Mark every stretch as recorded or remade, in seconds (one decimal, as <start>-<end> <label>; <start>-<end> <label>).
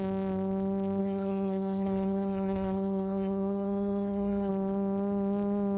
0.0-1.0 recorded; 1.0-4.5 remade; 4.5-5.8 recorded